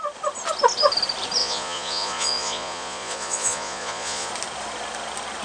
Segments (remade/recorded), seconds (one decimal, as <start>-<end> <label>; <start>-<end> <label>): 0.0-1.4 recorded; 1.4-4.3 remade; 4.3-5.4 recorded